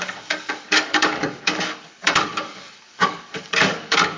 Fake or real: fake